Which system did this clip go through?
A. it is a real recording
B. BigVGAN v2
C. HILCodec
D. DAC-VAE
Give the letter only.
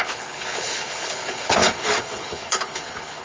C